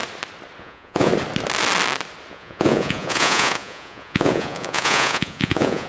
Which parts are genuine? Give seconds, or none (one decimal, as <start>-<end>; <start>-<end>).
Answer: 0.0-0.6; 1.1-2.3

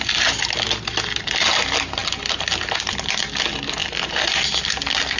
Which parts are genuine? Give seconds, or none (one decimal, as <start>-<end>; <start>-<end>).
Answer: 0.0-5.2

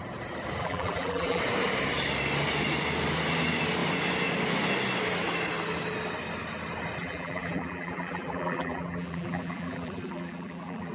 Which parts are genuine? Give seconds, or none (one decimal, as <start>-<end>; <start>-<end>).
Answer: 0.0-0.6; 1.4-7.0

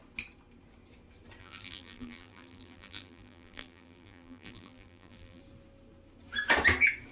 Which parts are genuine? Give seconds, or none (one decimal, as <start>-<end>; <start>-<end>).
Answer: 0.0-1.4; 5.4-7.1